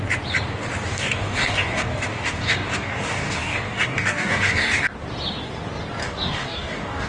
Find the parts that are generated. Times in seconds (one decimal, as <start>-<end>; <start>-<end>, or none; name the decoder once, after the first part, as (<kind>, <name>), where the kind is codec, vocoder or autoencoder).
0.9-4.8 (codec, DAC); 6.0-7.1